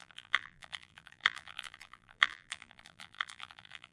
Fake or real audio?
fake